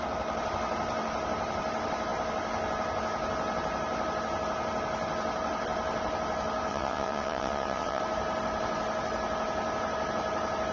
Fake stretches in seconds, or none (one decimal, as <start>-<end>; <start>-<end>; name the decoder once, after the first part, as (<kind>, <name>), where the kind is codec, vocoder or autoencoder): 6.7-8.0 (vocoder, WaveNeXt)